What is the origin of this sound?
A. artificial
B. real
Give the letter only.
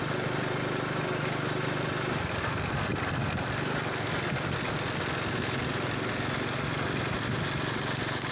B